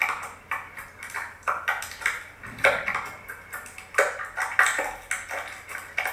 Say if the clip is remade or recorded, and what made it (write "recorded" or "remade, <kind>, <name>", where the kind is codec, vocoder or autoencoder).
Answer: recorded